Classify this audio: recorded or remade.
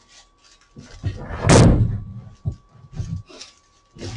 recorded